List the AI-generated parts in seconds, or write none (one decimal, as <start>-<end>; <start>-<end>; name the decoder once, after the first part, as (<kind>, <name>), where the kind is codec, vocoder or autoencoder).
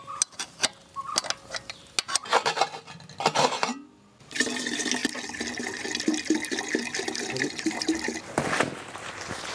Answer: none